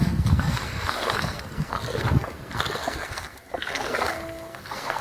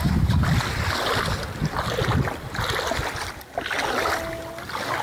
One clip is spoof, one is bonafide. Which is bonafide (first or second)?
second